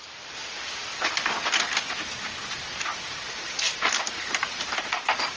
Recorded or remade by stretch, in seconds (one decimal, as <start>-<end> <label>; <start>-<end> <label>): 0.0-2.9 recorded; 2.9-5.4 remade